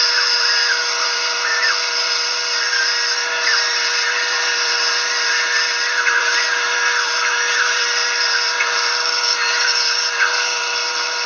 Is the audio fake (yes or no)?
yes